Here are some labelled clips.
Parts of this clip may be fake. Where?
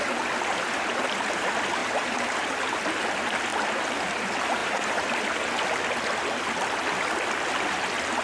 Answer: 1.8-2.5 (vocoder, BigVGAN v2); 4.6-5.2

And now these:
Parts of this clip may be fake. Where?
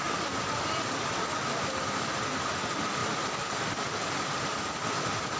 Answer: none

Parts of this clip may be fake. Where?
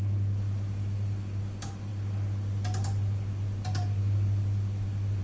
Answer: none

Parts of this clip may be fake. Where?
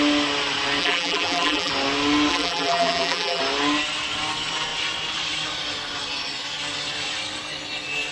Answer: 0.8-1.7 (vocoder, BigVGAN v2); 2.3-3.4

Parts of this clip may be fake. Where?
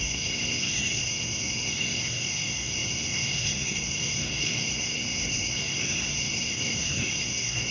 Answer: 0.0-7.7 (codec, SNAC)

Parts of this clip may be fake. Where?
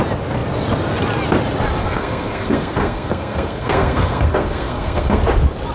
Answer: 1.8-5.2 (codec, SNAC)